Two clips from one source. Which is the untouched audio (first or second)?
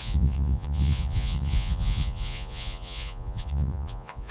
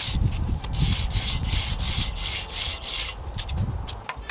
second